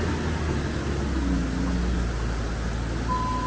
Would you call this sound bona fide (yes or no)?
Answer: yes